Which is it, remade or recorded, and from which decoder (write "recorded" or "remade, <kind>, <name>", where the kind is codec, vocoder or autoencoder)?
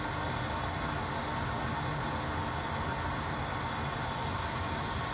recorded